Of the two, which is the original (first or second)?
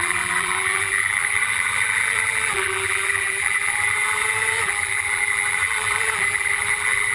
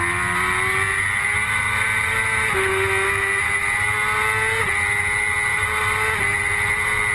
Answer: second